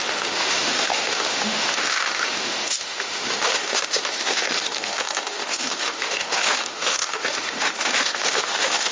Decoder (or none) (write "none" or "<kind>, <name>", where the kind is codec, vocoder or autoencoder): autoencoder, DAC-VAE